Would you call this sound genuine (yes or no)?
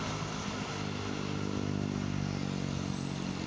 yes